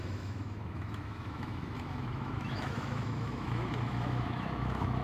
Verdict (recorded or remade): remade